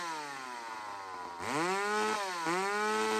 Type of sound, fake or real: real